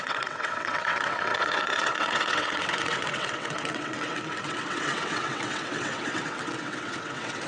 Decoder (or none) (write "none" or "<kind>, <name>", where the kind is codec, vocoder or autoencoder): vocoder, WaveNeXt